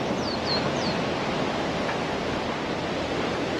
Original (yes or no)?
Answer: yes